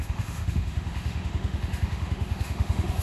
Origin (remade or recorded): remade